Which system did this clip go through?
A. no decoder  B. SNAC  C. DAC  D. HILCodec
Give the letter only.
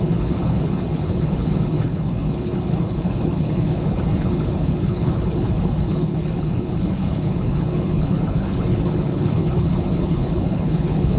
D